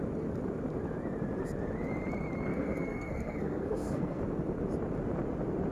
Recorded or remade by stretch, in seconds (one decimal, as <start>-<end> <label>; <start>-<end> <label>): 0.0-2.5 recorded; 2.5-4.2 remade; 4.2-5.7 recorded